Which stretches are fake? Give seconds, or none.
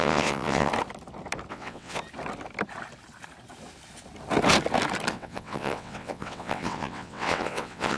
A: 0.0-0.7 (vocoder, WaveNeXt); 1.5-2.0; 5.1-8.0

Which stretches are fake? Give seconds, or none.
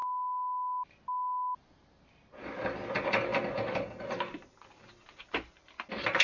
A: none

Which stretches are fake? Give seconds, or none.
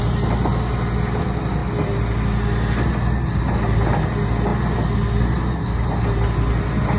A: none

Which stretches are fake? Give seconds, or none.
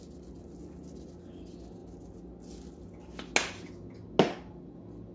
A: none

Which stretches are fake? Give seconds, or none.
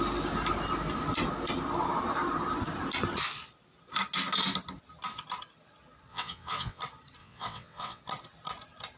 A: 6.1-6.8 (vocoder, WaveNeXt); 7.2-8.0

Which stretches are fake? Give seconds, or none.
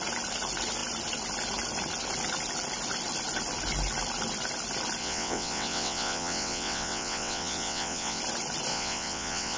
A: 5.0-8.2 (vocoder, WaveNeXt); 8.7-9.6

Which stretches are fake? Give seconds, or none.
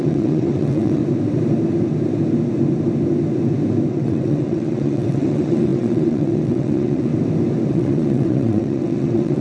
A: 0.0-1.0 (vocoder, WaveNeXt); 3.9-7.1; 7.7-9.4